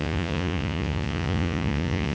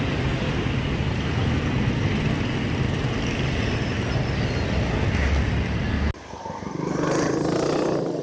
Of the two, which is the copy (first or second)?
first